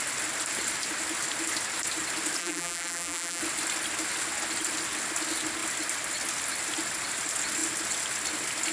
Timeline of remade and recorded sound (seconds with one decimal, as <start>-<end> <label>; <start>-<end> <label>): 0.0-2.4 recorded; 2.4-3.4 remade; 3.4-8.7 recorded

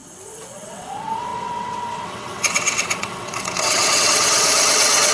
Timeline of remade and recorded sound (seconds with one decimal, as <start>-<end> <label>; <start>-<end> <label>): 0.0-5.1 remade

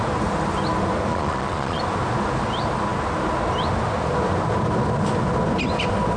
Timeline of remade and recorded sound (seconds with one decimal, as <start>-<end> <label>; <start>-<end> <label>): 0.0-1.1 recorded; 1.1-1.8 remade; 1.8-6.2 recorded

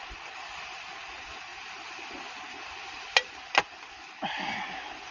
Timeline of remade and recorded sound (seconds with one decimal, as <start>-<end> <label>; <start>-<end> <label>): 0.0-5.1 recorded

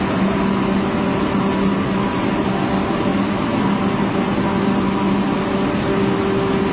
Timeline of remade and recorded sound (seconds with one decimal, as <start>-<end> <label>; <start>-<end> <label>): 0.0-6.7 recorded

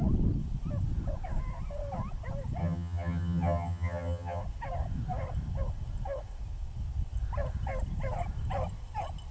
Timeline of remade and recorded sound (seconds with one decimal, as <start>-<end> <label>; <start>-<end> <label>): 0.0-2.6 recorded; 2.6-4.4 remade; 4.4-9.3 recorded

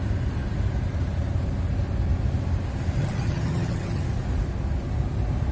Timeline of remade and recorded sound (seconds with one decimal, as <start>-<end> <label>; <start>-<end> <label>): 0.0-3.0 recorded; 3.0-4.0 remade; 4.0-5.5 recorded

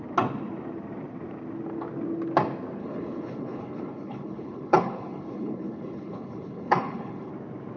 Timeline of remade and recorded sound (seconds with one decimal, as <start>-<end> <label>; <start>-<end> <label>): 0.0-2.8 recorded; 2.8-7.3 remade; 7.3-7.8 recorded